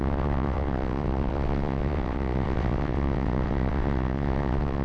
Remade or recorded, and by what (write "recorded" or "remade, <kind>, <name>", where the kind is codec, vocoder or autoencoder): remade, vocoder, WaveNeXt